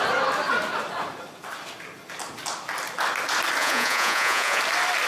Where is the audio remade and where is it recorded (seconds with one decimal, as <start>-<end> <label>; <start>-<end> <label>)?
0.0-3.6 recorded; 3.6-4.6 remade; 4.6-5.1 recorded